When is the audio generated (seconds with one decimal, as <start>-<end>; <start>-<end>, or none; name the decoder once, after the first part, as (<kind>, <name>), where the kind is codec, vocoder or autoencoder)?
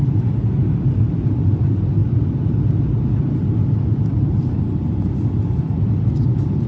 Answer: none